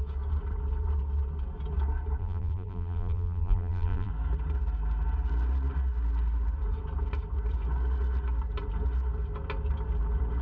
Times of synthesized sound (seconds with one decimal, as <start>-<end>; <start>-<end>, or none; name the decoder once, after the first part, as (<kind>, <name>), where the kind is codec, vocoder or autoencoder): 2.2-4.1 (vocoder, BigVGAN v2)